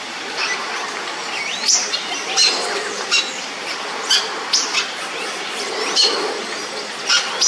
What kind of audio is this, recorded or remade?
recorded